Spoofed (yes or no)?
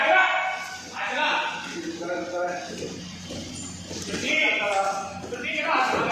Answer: no